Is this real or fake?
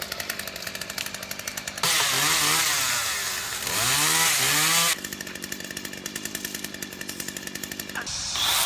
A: real